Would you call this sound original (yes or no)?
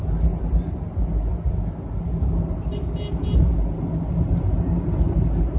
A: yes